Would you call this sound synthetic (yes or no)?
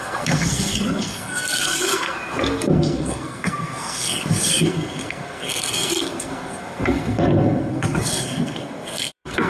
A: yes